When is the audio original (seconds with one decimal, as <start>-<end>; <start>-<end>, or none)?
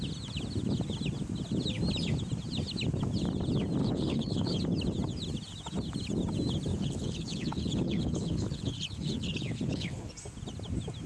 0.0-3.8; 4.6-6.7; 10.1-11.1